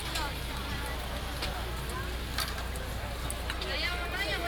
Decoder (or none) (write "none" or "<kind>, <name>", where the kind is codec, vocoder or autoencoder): none